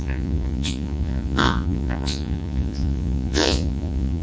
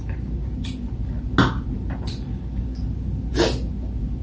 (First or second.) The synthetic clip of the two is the first